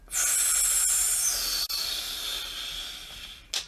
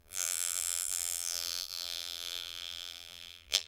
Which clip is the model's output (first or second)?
second